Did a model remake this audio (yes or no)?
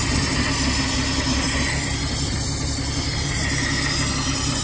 no